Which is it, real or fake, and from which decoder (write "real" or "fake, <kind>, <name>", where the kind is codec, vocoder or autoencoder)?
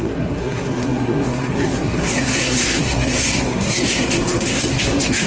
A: fake, codec, SNAC